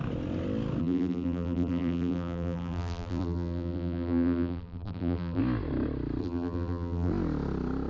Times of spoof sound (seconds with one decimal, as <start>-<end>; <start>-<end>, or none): 0.8-5.4; 6.2-7.1